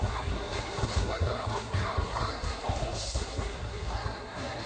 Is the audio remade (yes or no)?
yes